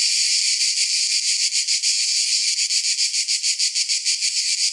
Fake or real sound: real